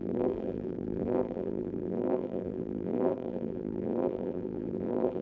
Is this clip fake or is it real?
fake